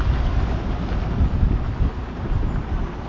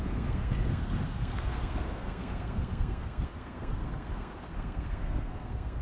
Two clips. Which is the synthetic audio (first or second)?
second